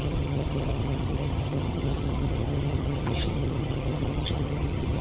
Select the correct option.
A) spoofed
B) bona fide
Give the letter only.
A